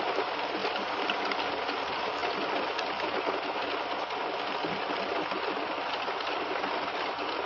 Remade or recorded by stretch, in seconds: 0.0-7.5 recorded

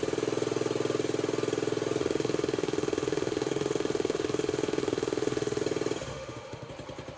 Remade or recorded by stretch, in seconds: 0.0-2.0 recorded; 2.0-5.6 remade; 5.6-6.1 recorded; 6.1-6.7 remade; 6.7-7.2 recorded